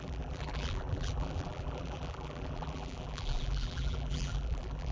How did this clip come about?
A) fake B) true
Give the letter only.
A